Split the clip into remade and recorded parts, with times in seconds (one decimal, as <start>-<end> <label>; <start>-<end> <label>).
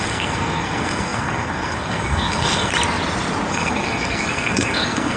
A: 0.0-2.7 remade; 2.7-3.5 recorded; 3.5-5.2 remade